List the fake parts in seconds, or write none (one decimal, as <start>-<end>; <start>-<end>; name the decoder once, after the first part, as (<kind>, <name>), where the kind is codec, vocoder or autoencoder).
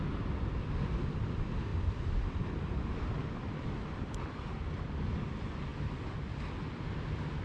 none